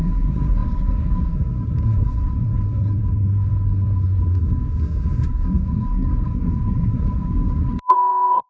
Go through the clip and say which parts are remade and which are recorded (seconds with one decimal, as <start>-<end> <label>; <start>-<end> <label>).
0.0-8.5 remade